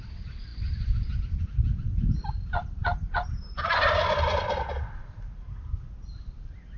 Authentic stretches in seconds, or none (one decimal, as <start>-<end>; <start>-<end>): 0.0-6.8